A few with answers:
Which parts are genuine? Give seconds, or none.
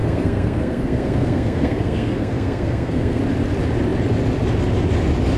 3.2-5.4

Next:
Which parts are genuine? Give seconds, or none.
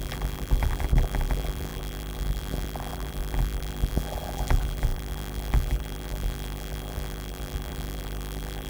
none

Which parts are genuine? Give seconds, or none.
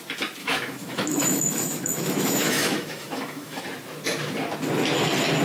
0.0-0.4; 3.6-5.4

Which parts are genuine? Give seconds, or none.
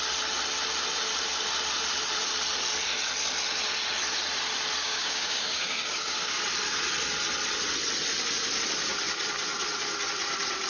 0.0-4.8; 6.4-10.7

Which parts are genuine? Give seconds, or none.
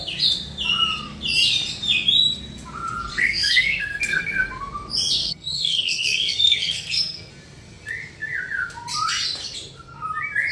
0.0-3.1; 4.5-5.2; 7.3-10.5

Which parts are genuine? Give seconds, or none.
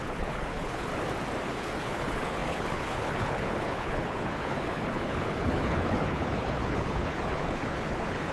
0.9-1.5